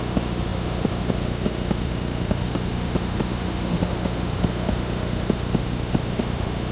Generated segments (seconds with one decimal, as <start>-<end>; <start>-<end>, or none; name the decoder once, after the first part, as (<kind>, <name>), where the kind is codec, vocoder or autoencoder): 0.0-6.7 (autoencoder, DAC-VAE)